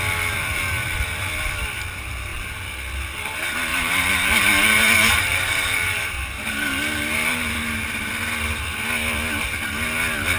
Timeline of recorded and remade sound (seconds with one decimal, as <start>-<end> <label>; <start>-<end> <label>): 0.0-3.7 recorded; 3.7-8.1 remade; 8.1-10.4 recorded